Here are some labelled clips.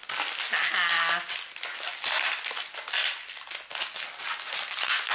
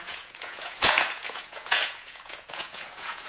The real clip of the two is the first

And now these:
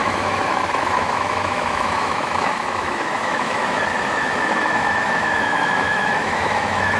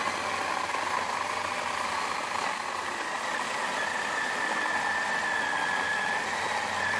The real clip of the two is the second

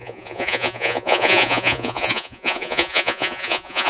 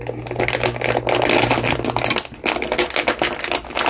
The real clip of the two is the second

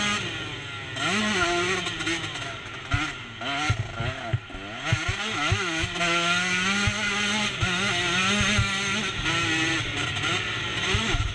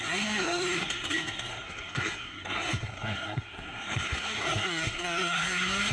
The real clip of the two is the first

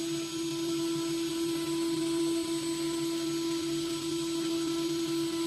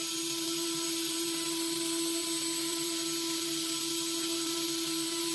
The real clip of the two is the first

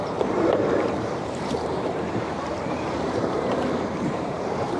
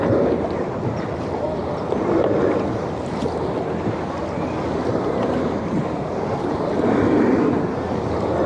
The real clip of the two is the second